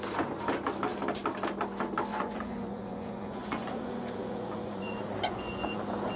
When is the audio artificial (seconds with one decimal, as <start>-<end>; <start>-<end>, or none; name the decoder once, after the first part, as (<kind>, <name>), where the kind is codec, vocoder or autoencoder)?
2.1-5.8 (vocoder, Vocos)